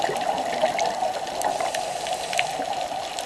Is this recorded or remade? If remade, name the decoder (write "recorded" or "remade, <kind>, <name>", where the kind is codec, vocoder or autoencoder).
recorded